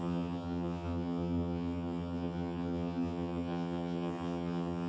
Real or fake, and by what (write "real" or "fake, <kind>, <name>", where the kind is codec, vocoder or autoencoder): fake, vocoder, HiFi-GAN